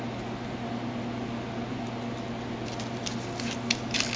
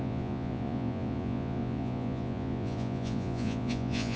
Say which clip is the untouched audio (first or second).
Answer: first